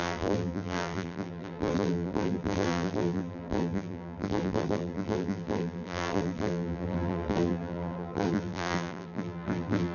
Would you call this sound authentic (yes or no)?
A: no